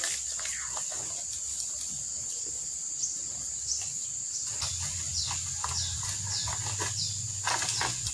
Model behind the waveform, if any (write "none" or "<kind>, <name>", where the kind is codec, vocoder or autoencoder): none